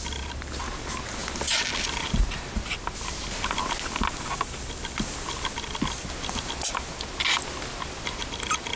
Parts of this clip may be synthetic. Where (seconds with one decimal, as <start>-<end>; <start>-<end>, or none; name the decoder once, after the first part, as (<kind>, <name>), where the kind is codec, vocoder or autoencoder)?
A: none